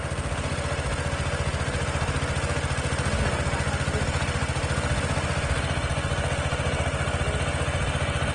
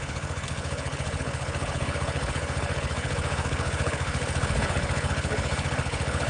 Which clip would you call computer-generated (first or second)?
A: second